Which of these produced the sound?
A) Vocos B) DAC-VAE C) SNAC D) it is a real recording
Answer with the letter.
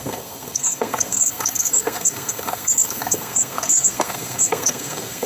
C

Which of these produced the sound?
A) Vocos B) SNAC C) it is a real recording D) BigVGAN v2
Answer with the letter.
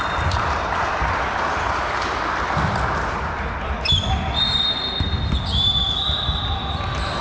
C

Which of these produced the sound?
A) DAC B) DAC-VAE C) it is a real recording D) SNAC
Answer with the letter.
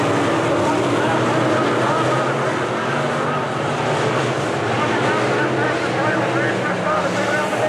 C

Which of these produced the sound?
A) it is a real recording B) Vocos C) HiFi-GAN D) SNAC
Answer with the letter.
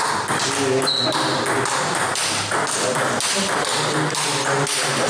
A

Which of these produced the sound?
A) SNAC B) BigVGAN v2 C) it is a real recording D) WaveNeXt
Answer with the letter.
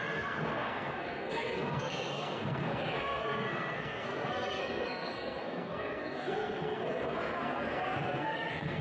A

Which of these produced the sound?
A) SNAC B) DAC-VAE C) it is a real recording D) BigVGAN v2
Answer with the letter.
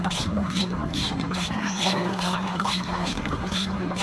A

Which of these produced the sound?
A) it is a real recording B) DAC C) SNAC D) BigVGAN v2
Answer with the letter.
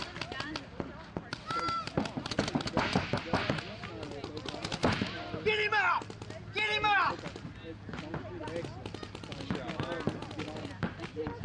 A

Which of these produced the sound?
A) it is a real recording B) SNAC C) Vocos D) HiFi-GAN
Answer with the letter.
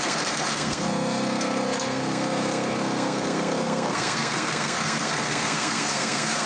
B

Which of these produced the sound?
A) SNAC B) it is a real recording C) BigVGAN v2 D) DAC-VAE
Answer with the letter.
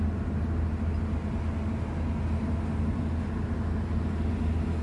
B